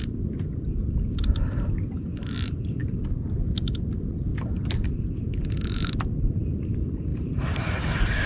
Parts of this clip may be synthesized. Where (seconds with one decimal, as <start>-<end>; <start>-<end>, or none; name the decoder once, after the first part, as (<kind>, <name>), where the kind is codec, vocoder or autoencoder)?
0.0-2.8 (vocoder, BigVGAN v2); 3.9-4.3; 5.2-8.3